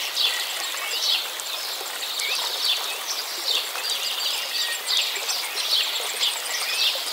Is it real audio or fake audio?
real